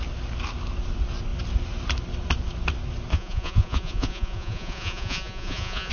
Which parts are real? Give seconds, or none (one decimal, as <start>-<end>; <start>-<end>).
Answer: 0.0-3.1